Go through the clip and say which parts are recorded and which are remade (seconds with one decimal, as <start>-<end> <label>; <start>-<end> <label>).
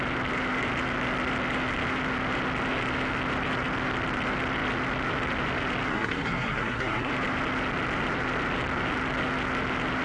0.0-5.9 recorded; 5.9-7.1 remade; 7.1-10.0 recorded